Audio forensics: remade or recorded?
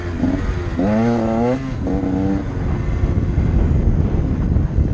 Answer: recorded